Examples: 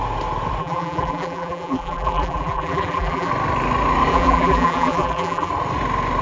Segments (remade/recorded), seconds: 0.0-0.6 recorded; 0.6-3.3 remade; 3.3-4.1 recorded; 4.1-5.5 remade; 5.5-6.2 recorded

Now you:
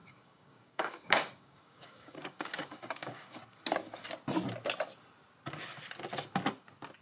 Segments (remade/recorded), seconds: 0.0-3.4 remade; 3.4-7.0 recorded

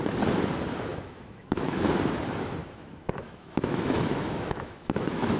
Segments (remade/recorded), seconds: 0.0-0.9 recorded; 0.9-1.9 remade; 1.9-2.6 recorded; 2.6-5.4 remade

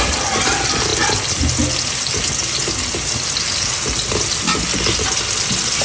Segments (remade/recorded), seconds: 0.0-5.8 recorded

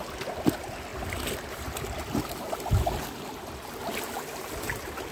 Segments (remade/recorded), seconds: 0.0-0.9 recorded; 0.9-4.0 remade; 4.0-5.1 recorded

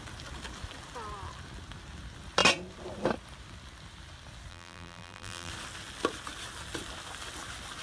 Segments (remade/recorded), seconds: 0.0-4.5 recorded; 4.5-5.5 remade; 5.5-7.8 recorded

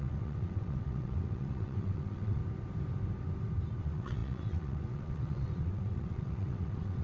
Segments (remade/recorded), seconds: 0.0-2.4 remade; 2.4-3.8 recorded; 3.8-7.0 remade